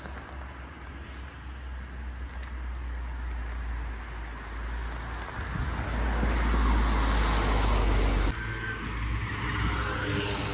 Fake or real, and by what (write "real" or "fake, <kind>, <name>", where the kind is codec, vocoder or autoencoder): real